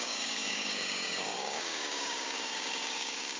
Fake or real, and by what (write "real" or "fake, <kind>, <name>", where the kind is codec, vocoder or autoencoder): fake, codec, DAC